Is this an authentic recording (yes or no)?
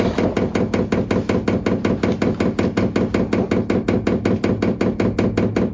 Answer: yes